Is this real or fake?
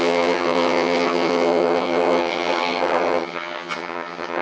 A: fake